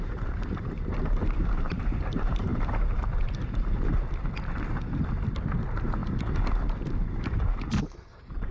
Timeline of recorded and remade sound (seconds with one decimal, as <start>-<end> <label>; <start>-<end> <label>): 0.0-2.5 remade; 2.5-5.4 recorded; 5.4-6.0 remade; 6.0-7.8 recorded; 7.8-8.5 remade